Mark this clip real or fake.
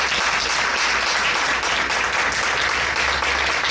real